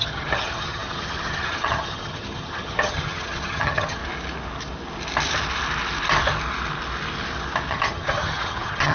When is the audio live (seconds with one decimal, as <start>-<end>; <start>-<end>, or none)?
4.0-7.7